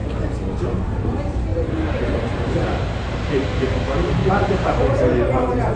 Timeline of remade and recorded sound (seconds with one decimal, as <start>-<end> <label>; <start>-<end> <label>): 0.0-0.6 recorded; 0.6-5.8 remade

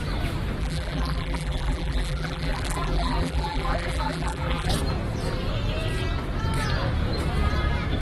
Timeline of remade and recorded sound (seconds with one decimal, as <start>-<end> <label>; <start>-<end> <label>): 0.0-0.6 recorded; 0.6-4.7 remade; 4.7-8.0 recorded

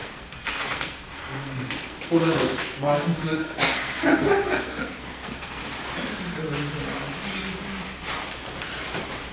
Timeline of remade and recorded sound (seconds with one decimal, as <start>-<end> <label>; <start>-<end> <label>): 0.0-5.6 remade; 5.6-9.3 recorded

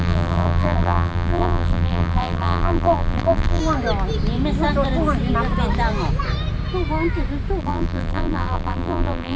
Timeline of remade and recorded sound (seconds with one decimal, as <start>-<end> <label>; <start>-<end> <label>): 0.0-3.6 remade; 3.6-7.6 recorded; 7.6-9.4 remade

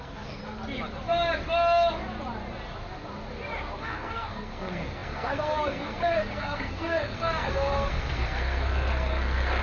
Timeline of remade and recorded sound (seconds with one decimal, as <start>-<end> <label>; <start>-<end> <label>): 0.0-0.4 remade; 0.4-3.8 recorded; 3.8-9.6 remade

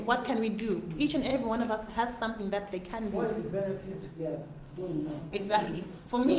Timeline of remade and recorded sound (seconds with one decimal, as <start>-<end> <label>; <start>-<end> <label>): 0.0-3.8 recorded; 3.8-6.4 remade

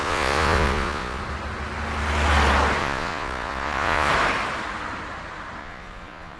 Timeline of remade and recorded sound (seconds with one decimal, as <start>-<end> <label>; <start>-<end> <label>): 0.0-1.2 remade; 1.2-2.8 recorded; 2.8-4.1 remade; 4.1-5.6 recorded; 5.6-6.4 remade

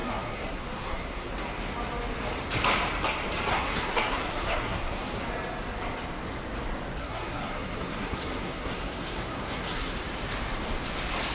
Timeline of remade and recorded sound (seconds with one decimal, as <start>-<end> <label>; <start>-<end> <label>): 0.0-1.3 remade; 1.3-3.5 recorded; 3.5-5.2 remade; 5.2-7.0 recorded; 7.0-10.0 remade; 10.0-11.3 recorded